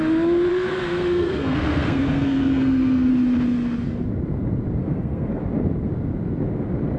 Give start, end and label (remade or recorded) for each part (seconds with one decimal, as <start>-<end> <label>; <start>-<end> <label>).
0.0-0.5 recorded; 0.5-3.1 remade; 3.1-4.8 recorded; 4.8-5.4 remade; 5.4-7.0 recorded